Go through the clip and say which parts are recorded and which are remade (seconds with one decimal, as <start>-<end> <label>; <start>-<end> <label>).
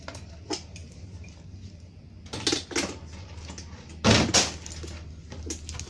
0.0-5.9 recorded